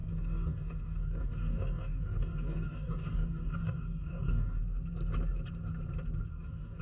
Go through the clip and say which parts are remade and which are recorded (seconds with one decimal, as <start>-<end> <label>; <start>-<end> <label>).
0.0-4.6 remade; 4.6-6.3 recorded; 6.3-6.8 remade